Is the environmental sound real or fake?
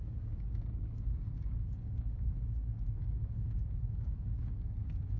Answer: fake